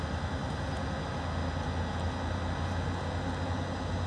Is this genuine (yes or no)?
yes